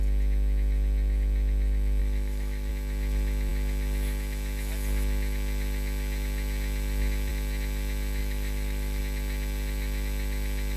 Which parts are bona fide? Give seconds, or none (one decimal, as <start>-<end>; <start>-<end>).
0.0-2.0; 2.7-8.2; 9.0-10.8